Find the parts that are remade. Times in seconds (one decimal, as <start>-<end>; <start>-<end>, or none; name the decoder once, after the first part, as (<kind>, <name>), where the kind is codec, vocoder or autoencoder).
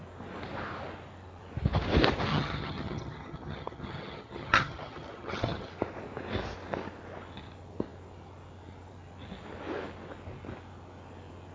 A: 2.3-5.7 (vocoder, HiFi-GAN)